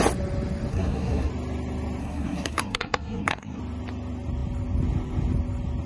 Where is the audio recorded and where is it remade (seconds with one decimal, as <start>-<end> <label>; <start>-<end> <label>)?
0.0-0.7 recorded; 0.7-1.3 remade; 1.3-2.0 recorded; 2.0-3.6 remade; 3.6-5.9 recorded